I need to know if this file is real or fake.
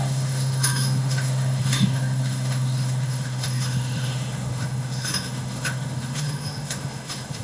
fake